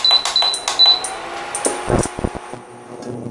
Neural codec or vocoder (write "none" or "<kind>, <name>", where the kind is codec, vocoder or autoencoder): none